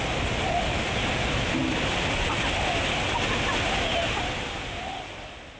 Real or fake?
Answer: real